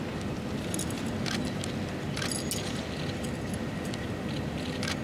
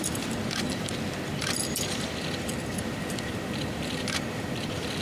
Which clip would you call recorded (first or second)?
first